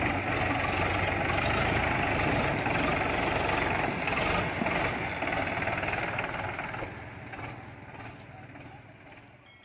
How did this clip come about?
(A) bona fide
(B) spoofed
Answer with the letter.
A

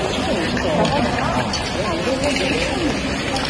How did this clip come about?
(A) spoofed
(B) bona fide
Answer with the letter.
B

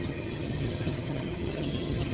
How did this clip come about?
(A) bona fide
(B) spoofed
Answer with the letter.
B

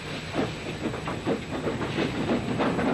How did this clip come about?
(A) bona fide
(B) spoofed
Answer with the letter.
A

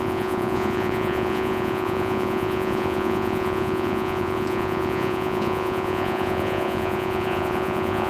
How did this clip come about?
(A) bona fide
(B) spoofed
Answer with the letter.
B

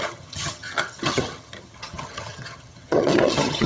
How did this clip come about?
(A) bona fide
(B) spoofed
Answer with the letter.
B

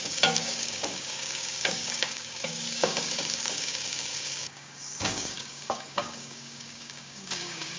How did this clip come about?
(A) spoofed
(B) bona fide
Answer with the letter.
A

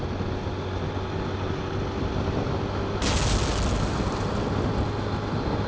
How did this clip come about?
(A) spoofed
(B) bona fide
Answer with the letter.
B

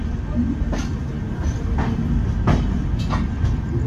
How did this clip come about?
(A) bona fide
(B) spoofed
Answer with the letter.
A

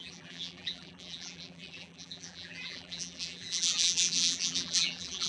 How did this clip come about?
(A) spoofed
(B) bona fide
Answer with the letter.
A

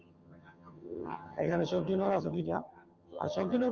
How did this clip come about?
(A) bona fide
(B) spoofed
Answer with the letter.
B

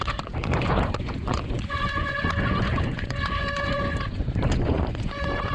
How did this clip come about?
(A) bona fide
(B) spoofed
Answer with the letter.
B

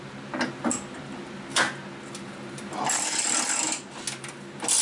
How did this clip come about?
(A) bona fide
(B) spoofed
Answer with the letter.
A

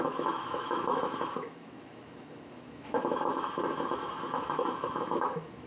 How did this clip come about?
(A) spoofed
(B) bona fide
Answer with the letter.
A